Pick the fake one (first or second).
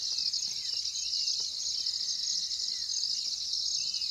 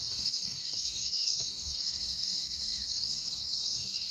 second